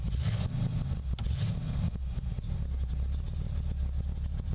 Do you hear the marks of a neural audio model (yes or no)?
no